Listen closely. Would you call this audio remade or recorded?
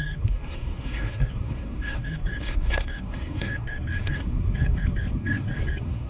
remade